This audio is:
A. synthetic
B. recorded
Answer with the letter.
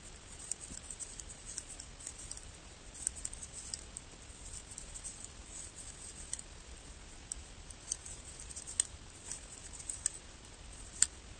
B